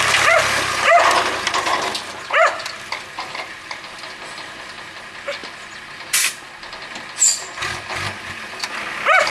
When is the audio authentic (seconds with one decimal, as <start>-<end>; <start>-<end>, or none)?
0.0-7.3; 7.9-9.3